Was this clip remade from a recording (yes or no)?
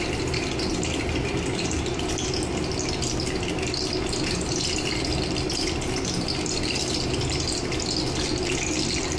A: no